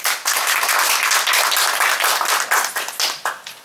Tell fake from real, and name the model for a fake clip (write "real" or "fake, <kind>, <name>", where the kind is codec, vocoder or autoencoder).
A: real